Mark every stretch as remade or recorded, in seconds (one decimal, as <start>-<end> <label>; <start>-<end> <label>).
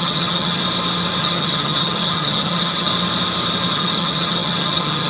0.0-0.6 remade; 0.6-1.2 recorded; 1.2-2.9 remade; 2.9-3.7 recorded; 3.7-5.1 remade